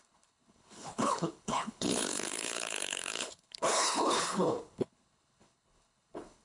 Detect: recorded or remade remade